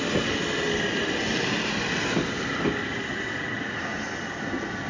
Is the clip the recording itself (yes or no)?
yes